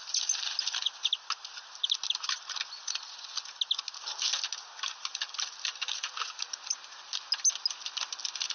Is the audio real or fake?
real